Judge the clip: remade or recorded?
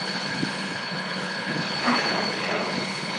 remade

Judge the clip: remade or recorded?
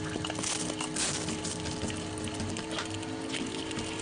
recorded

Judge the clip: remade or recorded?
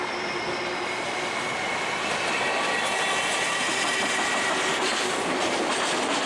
recorded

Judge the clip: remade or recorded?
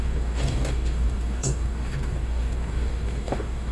remade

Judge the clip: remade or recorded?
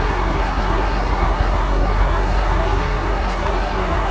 remade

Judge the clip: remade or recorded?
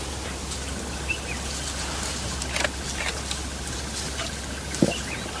recorded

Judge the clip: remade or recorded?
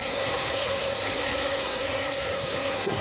remade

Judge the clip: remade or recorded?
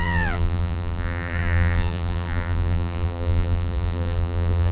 remade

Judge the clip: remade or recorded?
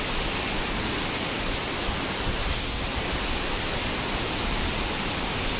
recorded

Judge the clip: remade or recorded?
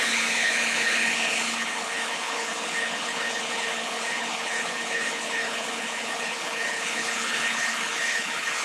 remade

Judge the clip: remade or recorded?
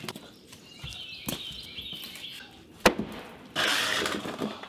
recorded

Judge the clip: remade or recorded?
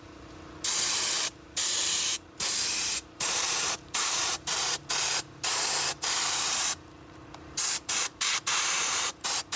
remade